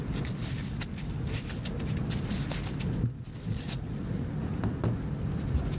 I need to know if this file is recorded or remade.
recorded